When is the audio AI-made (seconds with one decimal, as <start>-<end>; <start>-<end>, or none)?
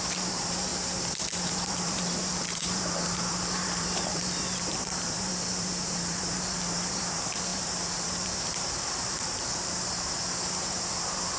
0.0-11.4